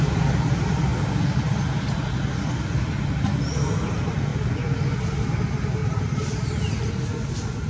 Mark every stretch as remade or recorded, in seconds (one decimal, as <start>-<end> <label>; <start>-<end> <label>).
0.0-7.7 recorded